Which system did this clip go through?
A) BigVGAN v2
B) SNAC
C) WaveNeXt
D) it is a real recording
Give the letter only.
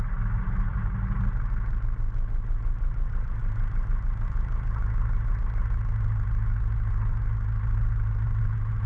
D